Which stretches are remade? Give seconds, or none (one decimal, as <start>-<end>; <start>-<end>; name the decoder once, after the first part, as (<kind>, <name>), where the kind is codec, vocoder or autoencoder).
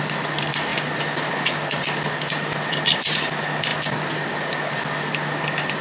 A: none